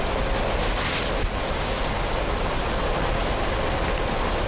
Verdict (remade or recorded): recorded